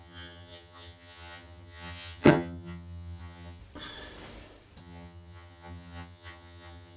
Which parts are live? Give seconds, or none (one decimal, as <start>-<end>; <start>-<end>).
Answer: 3.6-4.8

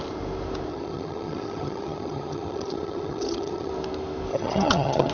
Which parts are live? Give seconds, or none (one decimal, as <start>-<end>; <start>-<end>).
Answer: 0.0-0.7; 3.7-4.3

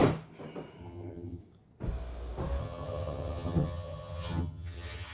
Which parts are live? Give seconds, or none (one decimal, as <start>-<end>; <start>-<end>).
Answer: 0.0-0.8; 1.4-2.6